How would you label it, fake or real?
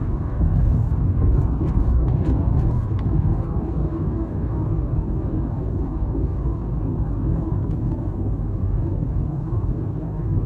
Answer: fake